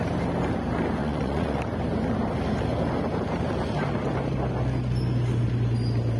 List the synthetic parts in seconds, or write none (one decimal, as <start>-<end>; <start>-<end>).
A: 1.0-1.6